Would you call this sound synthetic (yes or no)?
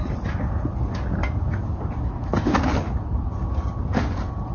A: no